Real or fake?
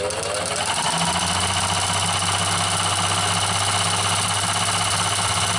real